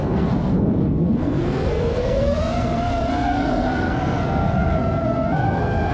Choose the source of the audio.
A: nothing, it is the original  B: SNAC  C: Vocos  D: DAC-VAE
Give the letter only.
B